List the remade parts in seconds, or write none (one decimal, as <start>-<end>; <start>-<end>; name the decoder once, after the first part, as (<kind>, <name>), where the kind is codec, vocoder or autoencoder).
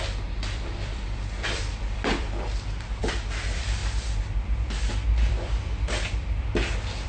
0.0-3.8 (vocoder, BigVGAN v2); 5.3-7.1